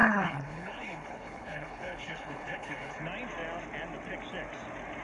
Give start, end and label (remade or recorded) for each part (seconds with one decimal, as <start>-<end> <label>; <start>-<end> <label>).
0.0-3.0 remade; 3.0-5.0 recorded

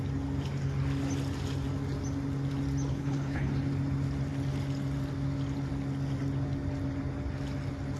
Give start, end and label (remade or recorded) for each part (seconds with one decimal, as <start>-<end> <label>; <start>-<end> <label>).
0.0-2.9 recorded; 2.9-3.5 remade; 3.5-8.0 recorded

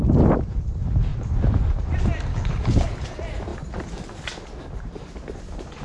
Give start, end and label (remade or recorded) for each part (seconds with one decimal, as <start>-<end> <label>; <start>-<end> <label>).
0.0-2.3 recorded; 2.3-2.9 remade; 2.9-5.8 recorded

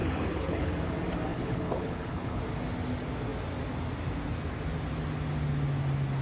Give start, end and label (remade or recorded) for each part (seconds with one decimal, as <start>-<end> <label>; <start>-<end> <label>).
0.0-0.7 remade; 0.7-1.3 recorded; 1.3-2.4 remade; 2.4-6.2 recorded

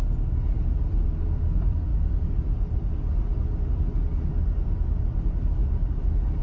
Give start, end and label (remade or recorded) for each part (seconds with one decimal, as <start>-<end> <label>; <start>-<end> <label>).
0.0-6.4 recorded

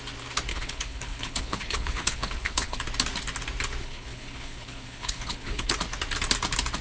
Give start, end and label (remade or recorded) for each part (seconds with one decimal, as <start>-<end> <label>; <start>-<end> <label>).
0.0-0.5 recorded; 0.5-2.8 remade; 2.8-3.8 recorded; 3.8-5.7 remade; 5.7-6.8 recorded